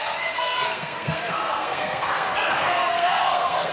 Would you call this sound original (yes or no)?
no